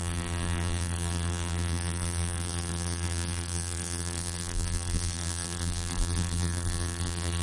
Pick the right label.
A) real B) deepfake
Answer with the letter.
B